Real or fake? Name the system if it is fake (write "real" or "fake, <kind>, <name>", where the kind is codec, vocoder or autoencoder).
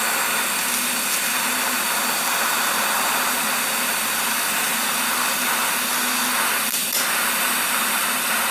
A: real